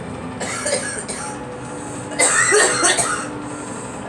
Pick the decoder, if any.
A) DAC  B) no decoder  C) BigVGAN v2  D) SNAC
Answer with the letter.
B